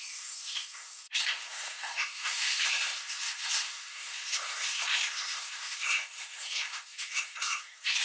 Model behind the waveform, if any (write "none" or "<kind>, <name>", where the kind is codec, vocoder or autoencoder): codec, SNAC